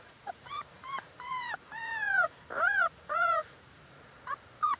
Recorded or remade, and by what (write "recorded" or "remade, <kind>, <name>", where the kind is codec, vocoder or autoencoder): remade, vocoder, Vocos